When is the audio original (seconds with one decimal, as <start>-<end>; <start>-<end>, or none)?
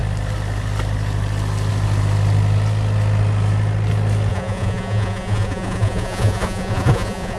0.0-4.3